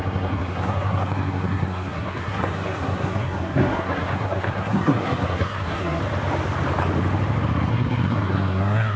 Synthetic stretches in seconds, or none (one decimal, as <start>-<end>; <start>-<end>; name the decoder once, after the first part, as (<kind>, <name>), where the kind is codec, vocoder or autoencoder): 0.0-6.0 (codec, SNAC); 7.7-9.0